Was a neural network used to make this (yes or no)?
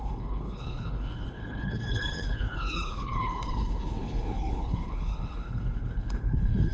yes